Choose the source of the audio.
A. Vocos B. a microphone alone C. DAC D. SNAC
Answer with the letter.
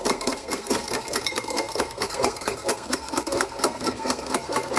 D